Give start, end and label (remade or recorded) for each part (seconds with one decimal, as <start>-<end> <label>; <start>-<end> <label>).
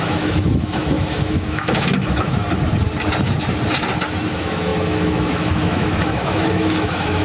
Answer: 0.0-2.4 remade; 2.4-4.3 recorded; 4.3-7.2 remade